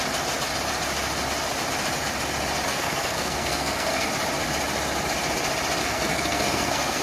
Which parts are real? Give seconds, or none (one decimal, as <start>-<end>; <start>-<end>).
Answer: 0.0-2.7; 4.1-5.8